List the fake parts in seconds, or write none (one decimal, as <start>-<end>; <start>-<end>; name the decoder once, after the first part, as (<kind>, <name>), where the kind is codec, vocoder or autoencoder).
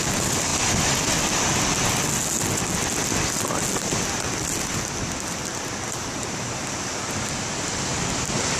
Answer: none